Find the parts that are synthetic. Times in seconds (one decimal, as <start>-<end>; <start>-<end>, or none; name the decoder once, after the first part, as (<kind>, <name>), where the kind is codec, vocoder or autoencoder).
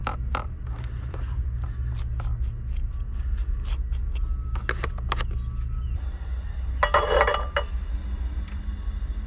none